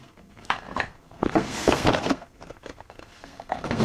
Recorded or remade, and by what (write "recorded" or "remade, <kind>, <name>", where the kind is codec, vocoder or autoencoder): remade, codec, SNAC